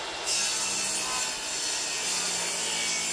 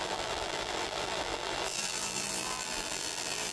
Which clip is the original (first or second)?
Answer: first